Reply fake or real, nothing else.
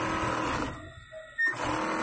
real